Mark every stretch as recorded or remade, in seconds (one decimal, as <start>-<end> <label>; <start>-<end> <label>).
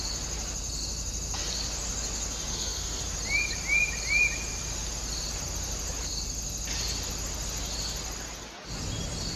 0.0-2.5 recorded; 2.5-3.0 remade; 3.0-9.4 recorded